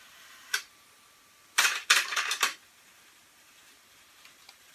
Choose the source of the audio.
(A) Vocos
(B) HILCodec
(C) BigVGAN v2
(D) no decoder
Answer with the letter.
C